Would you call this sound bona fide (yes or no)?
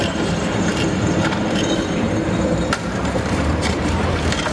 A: no